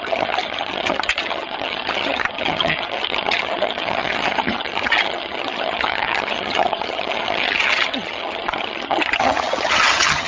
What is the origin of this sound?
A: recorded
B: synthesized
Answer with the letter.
B